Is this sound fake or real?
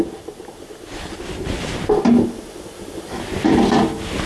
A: real